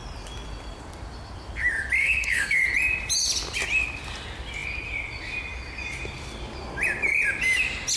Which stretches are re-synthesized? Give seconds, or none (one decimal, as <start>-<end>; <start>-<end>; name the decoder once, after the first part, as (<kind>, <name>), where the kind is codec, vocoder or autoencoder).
2.0-2.6 (codec, SNAC)